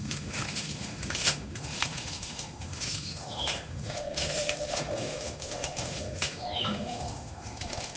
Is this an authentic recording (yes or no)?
no